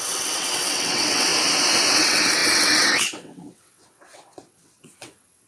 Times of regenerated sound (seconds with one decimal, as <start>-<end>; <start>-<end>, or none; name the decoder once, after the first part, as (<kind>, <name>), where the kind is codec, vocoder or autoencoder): 0.0-1.3 (vocoder, WaveNeXt); 1.9-5.5